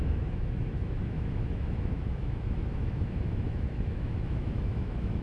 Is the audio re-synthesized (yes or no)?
yes